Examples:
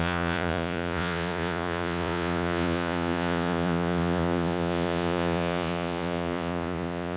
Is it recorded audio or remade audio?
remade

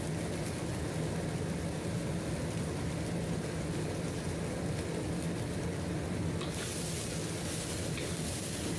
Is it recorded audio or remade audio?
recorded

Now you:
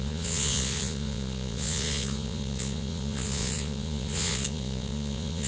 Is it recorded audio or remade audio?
remade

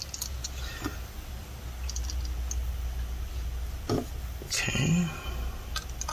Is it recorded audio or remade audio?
recorded